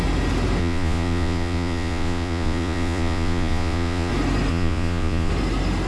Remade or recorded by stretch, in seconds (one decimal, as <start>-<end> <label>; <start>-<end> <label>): 0.0-0.6 recorded; 0.6-4.1 remade; 4.1-4.5 recorded; 4.5-5.3 remade; 5.3-5.9 recorded